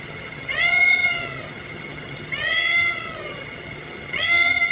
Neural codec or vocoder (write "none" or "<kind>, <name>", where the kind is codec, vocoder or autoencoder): vocoder, HiFi-GAN